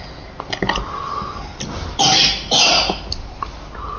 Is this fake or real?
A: real